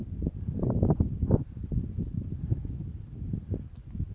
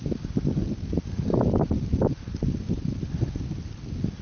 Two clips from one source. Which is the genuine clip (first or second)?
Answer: first